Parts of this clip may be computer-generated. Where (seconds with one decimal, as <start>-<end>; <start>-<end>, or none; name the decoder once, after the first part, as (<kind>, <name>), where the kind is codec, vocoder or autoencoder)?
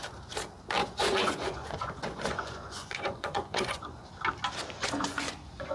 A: 0.8-4.1 (vocoder, Vocos); 4.8-5.7